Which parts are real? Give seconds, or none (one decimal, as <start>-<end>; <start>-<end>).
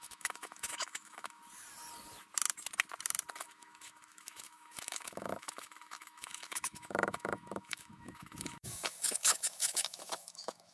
1.4-3.4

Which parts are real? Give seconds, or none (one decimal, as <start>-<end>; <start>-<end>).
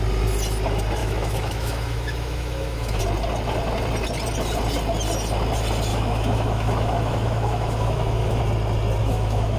0.0-1.0; 3.0-5.9; 8.4-9.0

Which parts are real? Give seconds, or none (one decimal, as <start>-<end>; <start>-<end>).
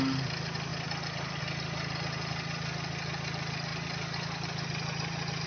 0.0-0.7; 1.4-5.5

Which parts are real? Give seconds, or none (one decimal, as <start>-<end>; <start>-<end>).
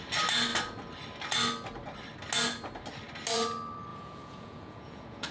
0.0-3.9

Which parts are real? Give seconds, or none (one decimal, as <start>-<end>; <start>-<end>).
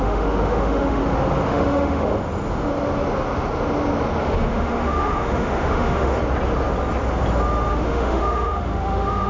1.0-1.5; 2.1-4.2; 6.2-7.7